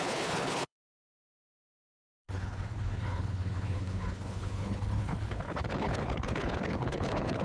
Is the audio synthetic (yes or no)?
yes